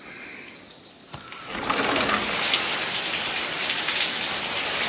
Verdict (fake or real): real